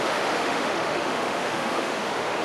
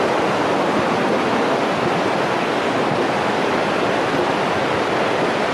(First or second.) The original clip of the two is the second